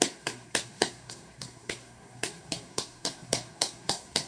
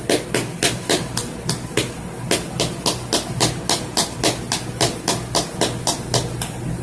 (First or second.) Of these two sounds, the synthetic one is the first